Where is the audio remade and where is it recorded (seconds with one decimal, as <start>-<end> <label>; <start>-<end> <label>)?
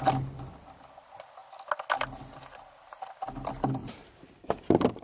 0.0-3.8 recorded; 3.8-5.0 remade